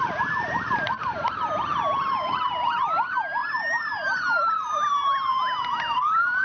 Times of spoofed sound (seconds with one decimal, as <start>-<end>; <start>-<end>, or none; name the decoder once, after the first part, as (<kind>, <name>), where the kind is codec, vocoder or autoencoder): 0.0-6.4 (vocoder, BigVGAN v2)